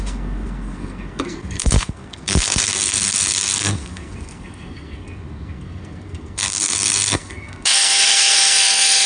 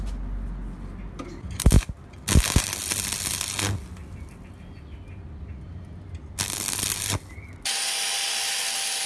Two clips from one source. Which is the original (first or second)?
second